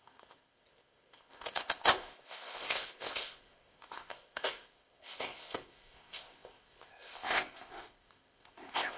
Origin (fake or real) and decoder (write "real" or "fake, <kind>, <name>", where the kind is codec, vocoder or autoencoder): fake, codec, ZipCodec